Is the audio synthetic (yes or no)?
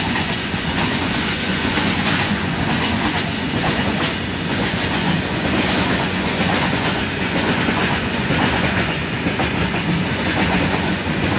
yes